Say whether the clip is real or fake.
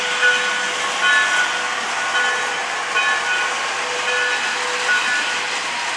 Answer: real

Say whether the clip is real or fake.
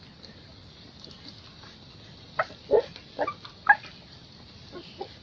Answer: real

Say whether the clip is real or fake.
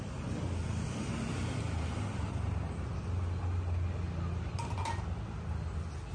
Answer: real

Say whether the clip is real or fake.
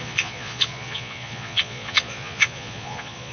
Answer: fake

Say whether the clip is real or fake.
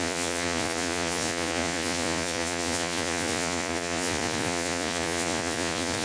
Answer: fake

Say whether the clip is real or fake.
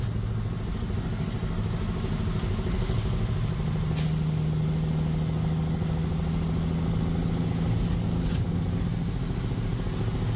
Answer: real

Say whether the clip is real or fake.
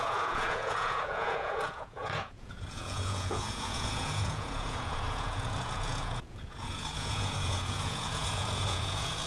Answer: fake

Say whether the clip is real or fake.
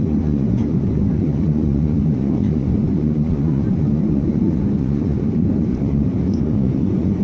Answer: fake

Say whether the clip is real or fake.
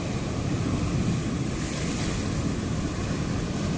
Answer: real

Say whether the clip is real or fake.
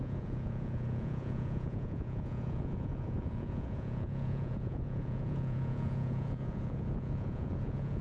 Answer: fake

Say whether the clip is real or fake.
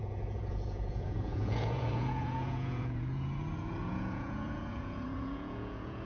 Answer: fake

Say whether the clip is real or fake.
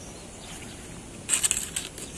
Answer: real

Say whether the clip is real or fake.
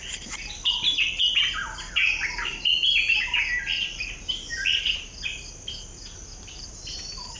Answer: real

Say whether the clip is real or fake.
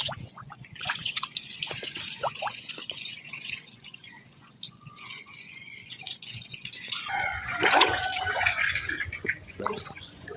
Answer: fake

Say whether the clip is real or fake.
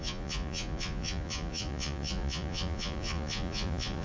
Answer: fake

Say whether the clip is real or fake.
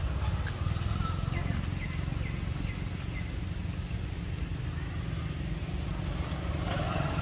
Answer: real